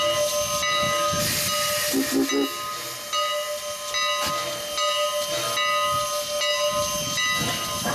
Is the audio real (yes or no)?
yes